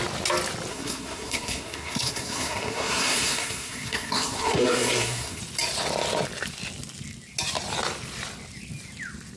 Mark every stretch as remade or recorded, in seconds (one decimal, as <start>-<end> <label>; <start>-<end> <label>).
0.0-0.7 recorded; 0.7-5.4 remade; 5.4-9.4 recorded